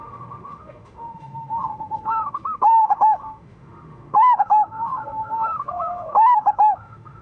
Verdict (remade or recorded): remade